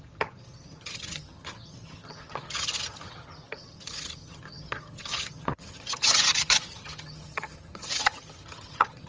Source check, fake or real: fake